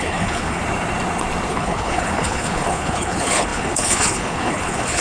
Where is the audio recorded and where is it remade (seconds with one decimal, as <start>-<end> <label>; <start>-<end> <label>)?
0.0-0.6 remade; 0.6-1.5 recorded; 1.5-5.0 remade